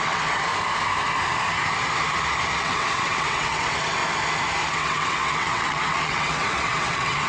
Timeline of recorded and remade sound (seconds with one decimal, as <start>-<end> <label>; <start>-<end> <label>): 0.0-0.5 remade; 0.5-2.6 recorded; 2.6-4.0 remade; 4.0-4.7 recorded; 4.7-7.3 remade